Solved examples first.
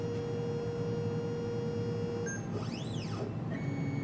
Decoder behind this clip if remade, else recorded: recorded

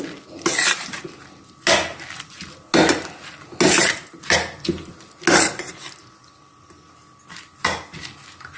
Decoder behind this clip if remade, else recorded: recorded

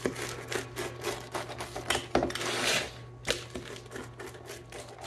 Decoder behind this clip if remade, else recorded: recorded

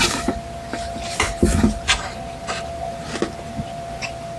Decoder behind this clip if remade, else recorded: recorded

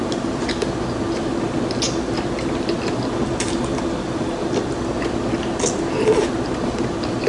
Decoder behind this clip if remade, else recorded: recorded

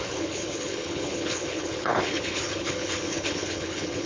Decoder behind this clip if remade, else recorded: remade, codec, HILCodec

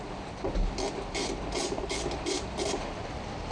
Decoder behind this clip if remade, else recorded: recorded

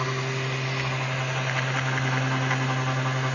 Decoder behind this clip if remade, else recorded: recorded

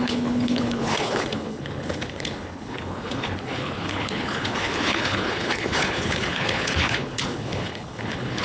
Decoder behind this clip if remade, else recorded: remade, codec, HILCodec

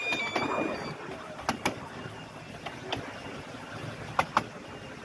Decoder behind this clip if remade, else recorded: recorded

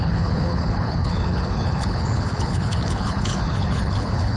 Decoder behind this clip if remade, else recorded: remade, codec, HILCodec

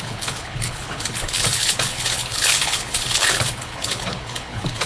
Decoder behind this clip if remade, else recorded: remade, codec, HILCodec